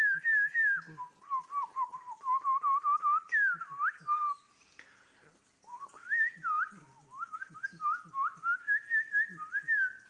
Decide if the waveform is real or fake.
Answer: real